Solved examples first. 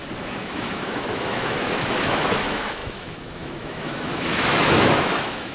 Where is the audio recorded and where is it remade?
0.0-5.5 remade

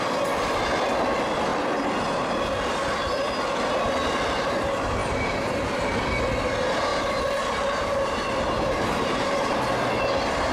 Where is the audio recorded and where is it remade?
0.0-5.0 recorded; 5.0-5.6 remade; 5.6-6.9 recorded; 6.9-9.6 remade; 9.6-10.5 recorded

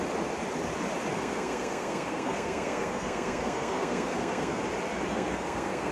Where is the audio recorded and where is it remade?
0.0-1.1 recorded; 1.1-4.6 remade; 4.6-5.1 recorded; 5.1-5.9 remade

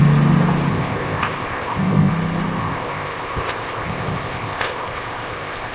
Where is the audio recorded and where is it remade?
0.0-0.7 recorded; 0.7-2.1 remade; 2.1-2.6 recorded; 2.6-5.7 remade

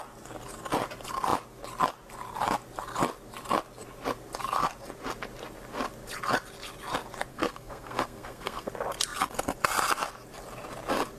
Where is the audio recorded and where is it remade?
0.0-7.3 recorded; 7.3-8.7 remade; 8.7-11.2 recorded

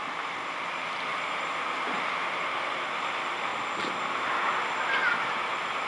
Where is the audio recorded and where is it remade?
0.0-1.1 recorded; 1.1-2.8 remade; 2.8-5.0 recorded; 5.0-5.9 remade

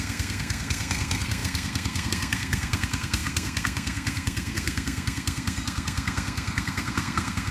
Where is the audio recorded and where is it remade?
0.0-7.5 remade

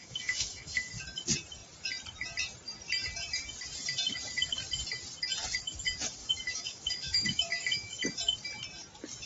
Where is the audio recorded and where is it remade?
0.0-0.9 remade; 0.9-6.2 recorded; 6.2-8.0 remade; 8.0-9.3 recorded